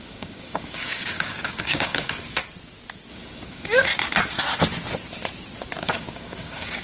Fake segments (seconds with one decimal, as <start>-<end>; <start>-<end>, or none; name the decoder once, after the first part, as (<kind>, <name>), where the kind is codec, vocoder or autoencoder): 0.0-2.4 (codec, DAC); 3.1-3.9; 5.8-6.8